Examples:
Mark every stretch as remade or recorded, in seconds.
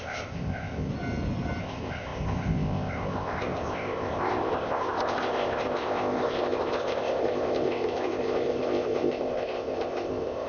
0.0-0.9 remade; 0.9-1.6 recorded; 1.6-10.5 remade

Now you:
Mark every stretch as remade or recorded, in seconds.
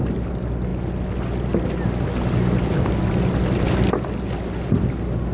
0.0-5.3 recorded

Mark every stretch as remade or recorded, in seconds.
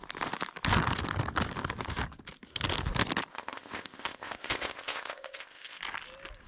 0.0-3.3 recorded; 3.3-5.8 remade; 5.8-6.5 recorded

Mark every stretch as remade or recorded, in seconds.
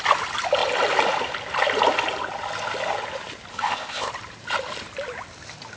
0.0-3.5 recorded; 3.5-4.1 remade; 4.1-5.8 recorded